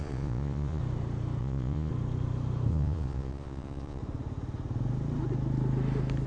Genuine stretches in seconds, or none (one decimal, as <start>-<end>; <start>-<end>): 0.8-1.4; 1.9-2.7; 4.0-6.3